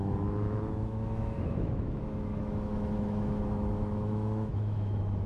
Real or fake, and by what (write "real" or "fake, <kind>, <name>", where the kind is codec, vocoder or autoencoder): fake, autoencoder, DAC-VAE